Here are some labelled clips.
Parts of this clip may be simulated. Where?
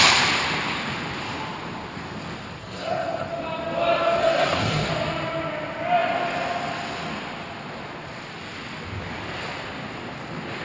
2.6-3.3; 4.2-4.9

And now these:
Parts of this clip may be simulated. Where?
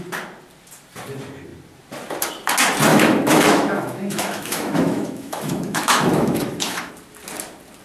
2.9-6.9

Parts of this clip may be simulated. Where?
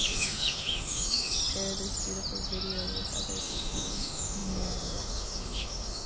0.0-1.4; 3.4-6.1